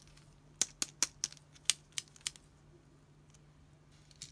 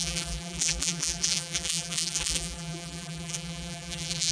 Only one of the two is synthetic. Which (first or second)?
second